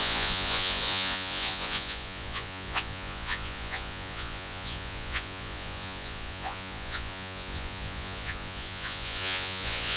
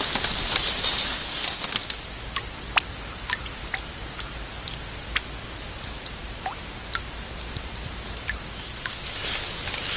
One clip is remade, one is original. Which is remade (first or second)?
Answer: first